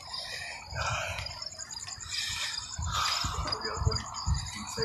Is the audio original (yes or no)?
yes